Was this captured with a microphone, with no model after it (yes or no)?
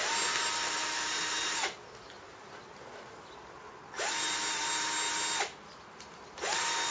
yes